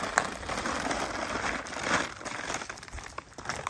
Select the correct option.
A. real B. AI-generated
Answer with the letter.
A